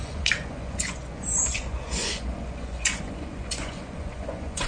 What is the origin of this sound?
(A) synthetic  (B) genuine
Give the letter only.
A